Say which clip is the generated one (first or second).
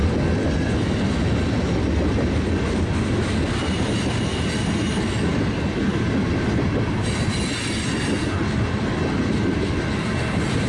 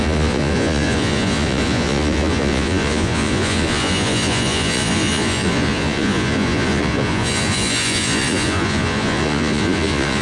second